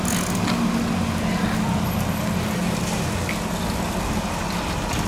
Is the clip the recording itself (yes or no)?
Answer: yes